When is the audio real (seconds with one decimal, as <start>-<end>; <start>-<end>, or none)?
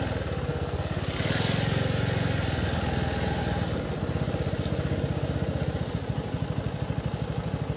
0.0-0.5; 1.0-7.8